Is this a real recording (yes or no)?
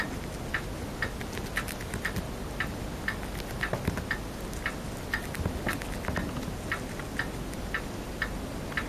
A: yes